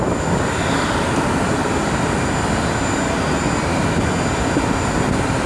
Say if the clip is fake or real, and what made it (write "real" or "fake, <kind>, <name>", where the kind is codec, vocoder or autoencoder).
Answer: real